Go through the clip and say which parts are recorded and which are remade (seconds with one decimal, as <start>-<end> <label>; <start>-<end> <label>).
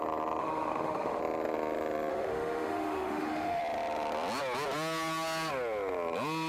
0.0-0.4 recorded; 0.4-1.2 remade; 1.2-2.1 recorded; 2.1-3.6 remade; 3.6-6.5 recorded